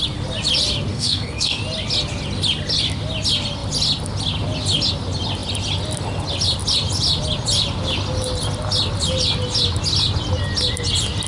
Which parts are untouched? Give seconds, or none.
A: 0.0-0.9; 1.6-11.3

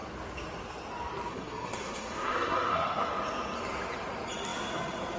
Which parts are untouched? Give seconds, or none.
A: 0.0-1.3; 3.1-5.2